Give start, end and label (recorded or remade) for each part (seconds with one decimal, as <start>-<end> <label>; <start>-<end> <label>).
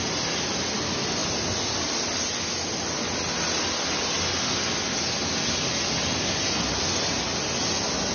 0.0-8.1 recorded